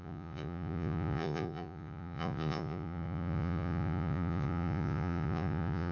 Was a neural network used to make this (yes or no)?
yes